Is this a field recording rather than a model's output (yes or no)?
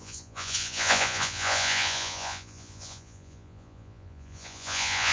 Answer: no